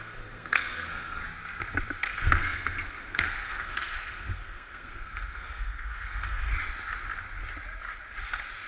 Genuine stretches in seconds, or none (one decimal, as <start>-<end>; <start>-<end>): 1.2-2.0; 6.5-8.7